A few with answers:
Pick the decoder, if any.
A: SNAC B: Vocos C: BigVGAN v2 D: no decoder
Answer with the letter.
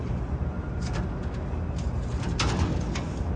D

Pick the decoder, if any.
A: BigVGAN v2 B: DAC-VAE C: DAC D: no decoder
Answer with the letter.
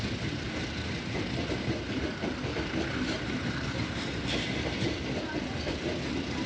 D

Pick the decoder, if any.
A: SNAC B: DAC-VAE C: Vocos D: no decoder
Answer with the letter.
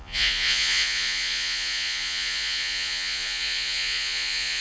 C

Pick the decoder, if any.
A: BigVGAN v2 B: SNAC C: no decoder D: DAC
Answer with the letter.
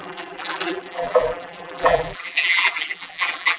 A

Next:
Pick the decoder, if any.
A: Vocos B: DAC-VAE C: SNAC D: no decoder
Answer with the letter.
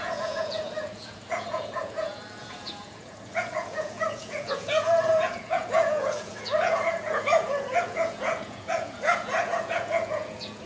A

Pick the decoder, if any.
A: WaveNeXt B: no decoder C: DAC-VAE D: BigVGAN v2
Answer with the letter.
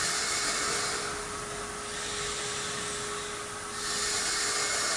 B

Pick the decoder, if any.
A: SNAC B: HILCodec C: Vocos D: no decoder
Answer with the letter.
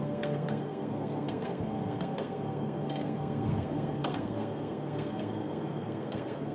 A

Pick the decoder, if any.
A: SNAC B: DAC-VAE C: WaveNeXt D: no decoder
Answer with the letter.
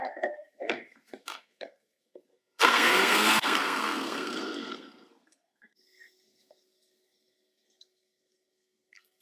A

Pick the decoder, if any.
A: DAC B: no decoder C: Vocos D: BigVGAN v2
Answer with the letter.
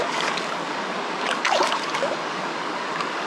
A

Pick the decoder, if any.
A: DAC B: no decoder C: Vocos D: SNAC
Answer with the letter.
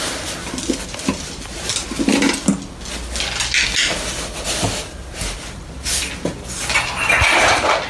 B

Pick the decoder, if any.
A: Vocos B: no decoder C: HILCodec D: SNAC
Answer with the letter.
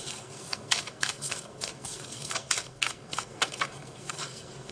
D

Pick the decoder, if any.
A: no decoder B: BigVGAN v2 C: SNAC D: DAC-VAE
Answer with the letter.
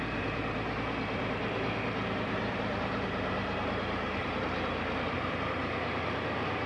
B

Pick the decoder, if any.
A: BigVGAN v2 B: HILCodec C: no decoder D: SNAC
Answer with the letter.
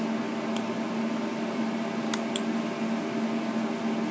C